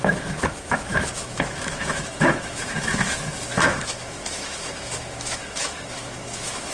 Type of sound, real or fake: fake